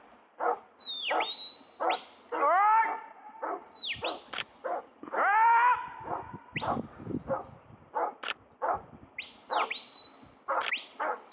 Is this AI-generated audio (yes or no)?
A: no